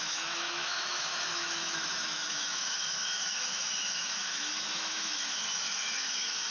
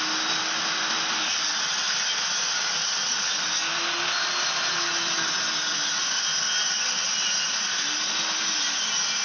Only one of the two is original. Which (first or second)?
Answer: second